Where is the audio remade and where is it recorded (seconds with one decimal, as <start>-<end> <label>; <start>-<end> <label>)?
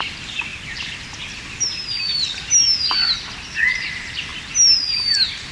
0.0-5.5 recorded